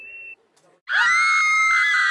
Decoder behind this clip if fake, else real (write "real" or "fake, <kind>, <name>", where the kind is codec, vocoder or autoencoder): real